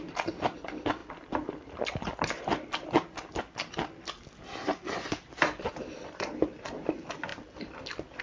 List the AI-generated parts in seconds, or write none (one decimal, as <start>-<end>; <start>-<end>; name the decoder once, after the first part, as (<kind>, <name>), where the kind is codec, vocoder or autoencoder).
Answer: none

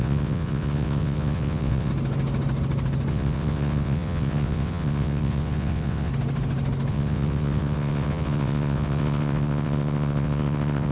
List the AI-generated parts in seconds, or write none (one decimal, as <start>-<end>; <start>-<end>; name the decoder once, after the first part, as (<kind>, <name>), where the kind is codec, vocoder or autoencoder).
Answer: 0.0-1.9 (vocoder, WaveNeXt); 3.1-6.1; 6.9-10.9

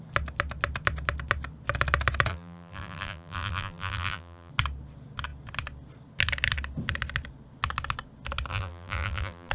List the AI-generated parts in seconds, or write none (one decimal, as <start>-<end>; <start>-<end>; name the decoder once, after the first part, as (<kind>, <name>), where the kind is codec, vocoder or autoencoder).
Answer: 2.3-4.5 (vocoder, BigVGAN v2); 8.5-9.5

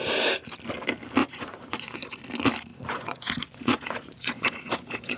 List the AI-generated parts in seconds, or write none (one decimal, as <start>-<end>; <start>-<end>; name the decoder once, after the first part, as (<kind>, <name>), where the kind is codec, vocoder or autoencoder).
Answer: 1.2-2.2 (vocoder, Vocos); 2.7-5.2

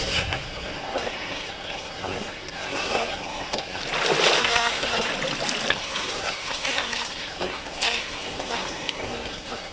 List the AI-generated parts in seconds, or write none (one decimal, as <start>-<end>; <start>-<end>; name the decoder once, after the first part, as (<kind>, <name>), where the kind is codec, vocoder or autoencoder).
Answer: 0.0-3.8 (codec, SNAC); 4.4-5.1; 5.7-9.7

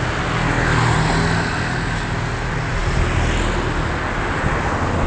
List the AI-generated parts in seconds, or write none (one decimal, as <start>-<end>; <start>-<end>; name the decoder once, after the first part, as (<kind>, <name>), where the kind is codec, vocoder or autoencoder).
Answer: none